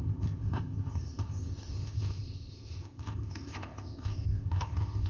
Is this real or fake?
fake